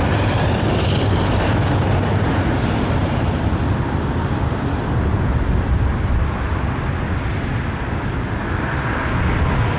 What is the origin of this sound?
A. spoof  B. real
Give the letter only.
B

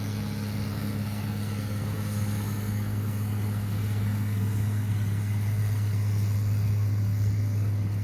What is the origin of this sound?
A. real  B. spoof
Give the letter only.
B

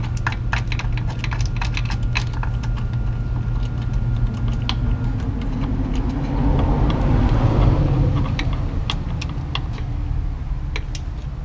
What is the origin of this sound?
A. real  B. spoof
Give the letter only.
A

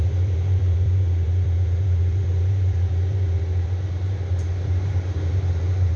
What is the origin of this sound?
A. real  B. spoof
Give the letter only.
B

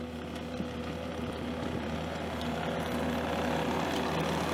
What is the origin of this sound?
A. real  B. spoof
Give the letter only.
A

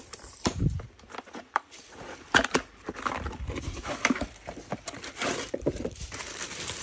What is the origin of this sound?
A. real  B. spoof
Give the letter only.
B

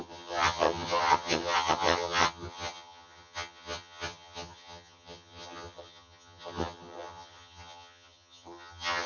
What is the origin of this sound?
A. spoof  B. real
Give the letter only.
A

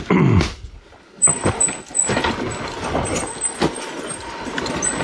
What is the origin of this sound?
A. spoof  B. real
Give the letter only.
B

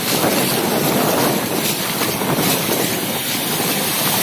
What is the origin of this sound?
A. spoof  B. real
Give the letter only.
B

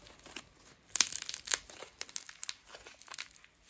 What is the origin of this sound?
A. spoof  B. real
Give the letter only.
B